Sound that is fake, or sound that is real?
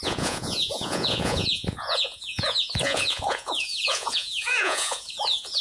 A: fake